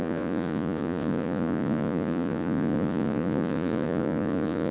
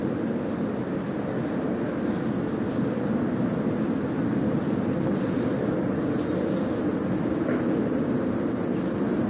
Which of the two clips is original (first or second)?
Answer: second